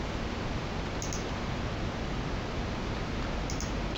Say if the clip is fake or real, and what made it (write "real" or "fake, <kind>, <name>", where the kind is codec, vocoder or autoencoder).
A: real